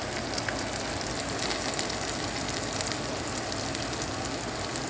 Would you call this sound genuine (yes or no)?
yes